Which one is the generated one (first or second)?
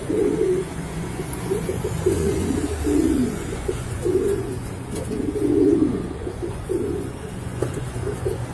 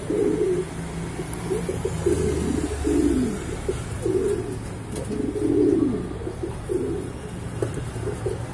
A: first